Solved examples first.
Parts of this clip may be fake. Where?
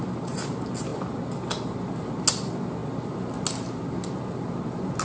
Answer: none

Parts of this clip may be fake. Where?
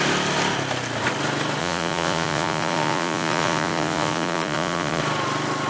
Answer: 1.6-5.0 (vocoder, Vocos)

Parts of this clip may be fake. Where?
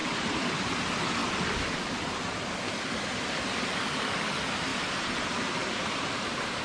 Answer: 0.0-0.7 (vocoder, BigVGAN v2); 1.2-2.7; 4.7-6.6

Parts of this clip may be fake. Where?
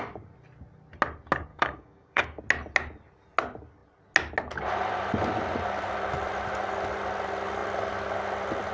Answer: 1.5-2.4 (codec, DAC)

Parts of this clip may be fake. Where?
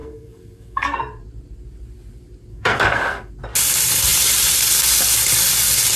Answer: 0.0-1.0 (codec, SNAC); 2.5-3.3